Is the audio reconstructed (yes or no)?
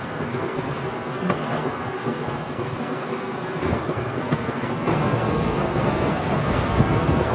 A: yes